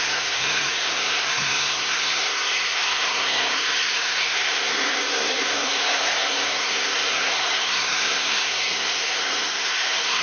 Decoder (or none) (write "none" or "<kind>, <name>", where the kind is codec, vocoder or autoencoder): codec, SNAC